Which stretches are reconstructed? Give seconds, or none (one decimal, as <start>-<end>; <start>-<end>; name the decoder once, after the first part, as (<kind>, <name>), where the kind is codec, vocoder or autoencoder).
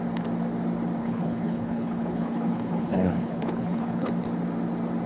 1.0-4.1 (codec, HILCodec)